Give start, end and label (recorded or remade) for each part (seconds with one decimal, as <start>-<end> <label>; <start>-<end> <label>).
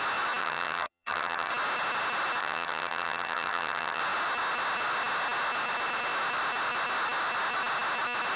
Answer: 0.0-0.4 recorded; 0.4-1.5 remade; 1.5-2.4 recorded; 2.4-4.0 remade; 4.0-8.4 recorded